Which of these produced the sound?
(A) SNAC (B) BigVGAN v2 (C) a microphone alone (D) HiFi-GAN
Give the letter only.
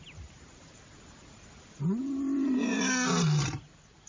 C